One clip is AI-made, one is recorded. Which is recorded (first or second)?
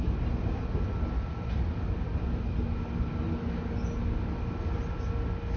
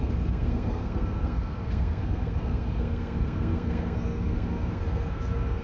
first